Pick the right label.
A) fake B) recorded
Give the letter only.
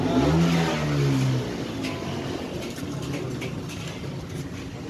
B